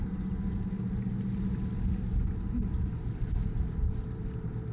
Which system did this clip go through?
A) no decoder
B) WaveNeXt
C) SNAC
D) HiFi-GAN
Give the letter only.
A